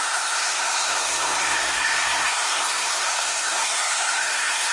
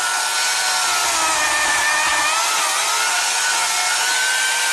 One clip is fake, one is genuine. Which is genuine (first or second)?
second